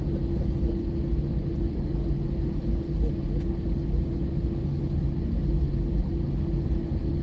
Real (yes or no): yes